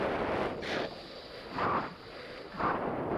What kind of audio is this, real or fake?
real